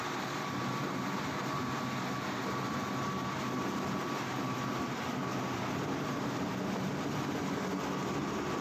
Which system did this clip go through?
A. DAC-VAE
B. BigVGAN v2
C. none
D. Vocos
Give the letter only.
C